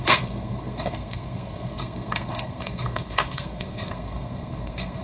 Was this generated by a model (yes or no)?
yes